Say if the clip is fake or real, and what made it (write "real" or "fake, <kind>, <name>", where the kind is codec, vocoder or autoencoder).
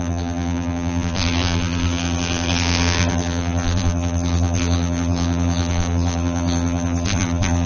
fake, vocoder, BigVGAN v2